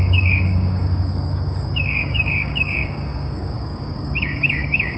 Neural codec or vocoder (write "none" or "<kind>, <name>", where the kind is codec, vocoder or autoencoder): codec, DAC